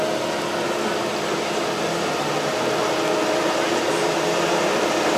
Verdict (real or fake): real